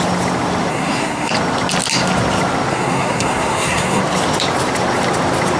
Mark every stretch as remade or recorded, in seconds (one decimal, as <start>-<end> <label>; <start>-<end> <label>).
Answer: 0.0-0.7 recorded; 0.7-1.3 remade; 1.3-2.7 recorded; 2.7-4.0 remade; 4.0-5.6 recorded